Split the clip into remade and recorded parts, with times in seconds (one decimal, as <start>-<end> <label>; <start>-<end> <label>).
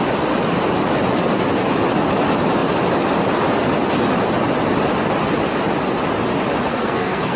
0.0-6.7 recorded; 6.7-7.4 remade